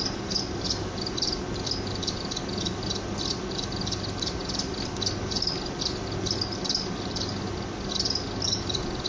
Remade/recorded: recorded